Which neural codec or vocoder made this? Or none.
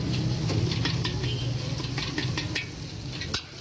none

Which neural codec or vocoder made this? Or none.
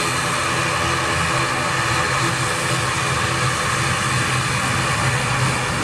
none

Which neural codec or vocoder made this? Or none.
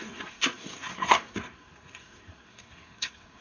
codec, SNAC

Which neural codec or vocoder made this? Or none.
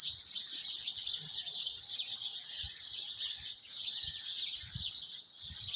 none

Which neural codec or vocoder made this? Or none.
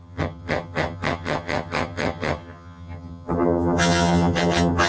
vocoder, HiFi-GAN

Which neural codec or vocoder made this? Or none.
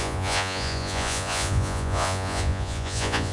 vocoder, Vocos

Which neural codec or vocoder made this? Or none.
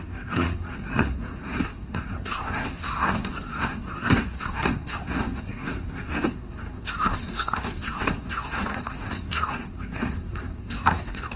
codec, SNAC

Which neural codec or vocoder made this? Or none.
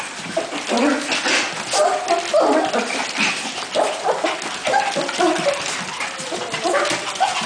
none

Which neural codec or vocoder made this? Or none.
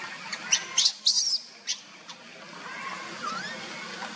none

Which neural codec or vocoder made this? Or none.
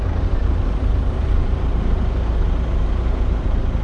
vocoder, BigVGAN v2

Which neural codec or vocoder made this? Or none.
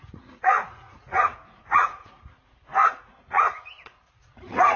vocoder, Vocos